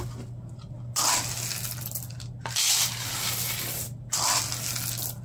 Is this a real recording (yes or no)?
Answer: yes